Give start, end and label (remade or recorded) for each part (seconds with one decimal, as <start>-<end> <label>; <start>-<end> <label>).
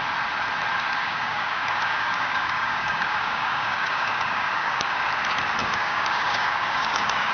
0.0-1.0 recorded; 1.0-5.0 remade; 5.0-5.6 recorded; 5.6-7.3 remade